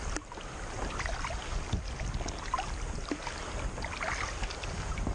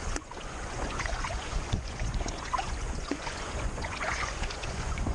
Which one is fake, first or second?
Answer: second